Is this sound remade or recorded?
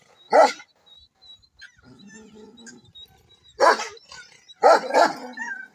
recorded